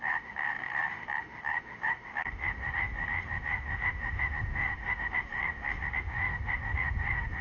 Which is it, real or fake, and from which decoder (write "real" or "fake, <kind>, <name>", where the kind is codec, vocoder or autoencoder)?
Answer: fake, autoencoder, DAC-VAE